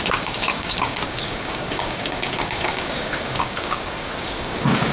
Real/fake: fake